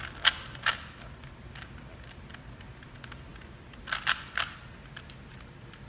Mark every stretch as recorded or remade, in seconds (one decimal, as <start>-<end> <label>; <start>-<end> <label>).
0.0-5.9 recorded